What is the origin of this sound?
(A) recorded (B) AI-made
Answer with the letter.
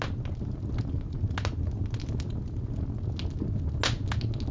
A